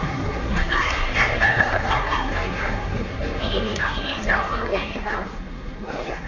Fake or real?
fake